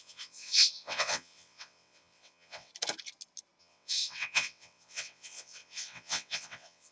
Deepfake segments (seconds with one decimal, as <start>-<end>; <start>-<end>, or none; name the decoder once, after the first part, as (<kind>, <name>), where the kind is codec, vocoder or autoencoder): 0.0-2.7 (vocoder, WaveNeXt); 3.6-6.9